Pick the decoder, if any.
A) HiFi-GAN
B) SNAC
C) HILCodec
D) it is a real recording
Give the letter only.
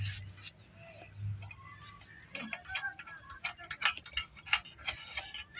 D